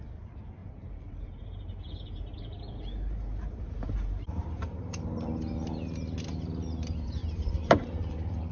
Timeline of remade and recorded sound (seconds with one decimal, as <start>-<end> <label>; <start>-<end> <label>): 0.0-0.6 recorded; 0.6-5.3 remade; 5.3-7.2 recorded; 7.2-8.5 remade